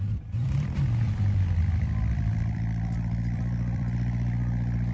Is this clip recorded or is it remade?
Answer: remade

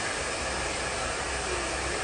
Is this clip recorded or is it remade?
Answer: recorded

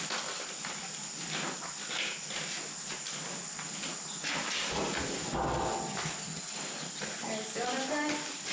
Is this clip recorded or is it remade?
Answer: recorded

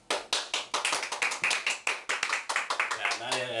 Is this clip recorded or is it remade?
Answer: recorded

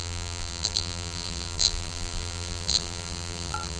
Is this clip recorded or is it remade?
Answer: remade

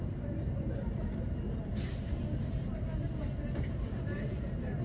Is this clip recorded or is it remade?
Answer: remade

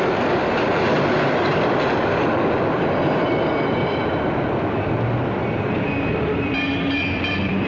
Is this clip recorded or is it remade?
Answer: remade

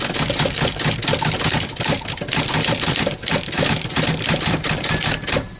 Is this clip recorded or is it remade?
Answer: recorded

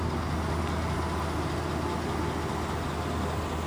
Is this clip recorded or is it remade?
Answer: recorded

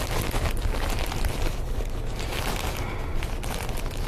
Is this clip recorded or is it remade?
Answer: recorded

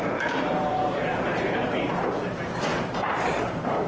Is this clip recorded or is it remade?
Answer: remade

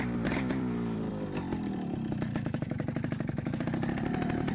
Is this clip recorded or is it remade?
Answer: remade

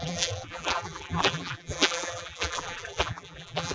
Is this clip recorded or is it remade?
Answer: remade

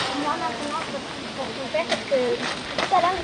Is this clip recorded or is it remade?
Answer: remade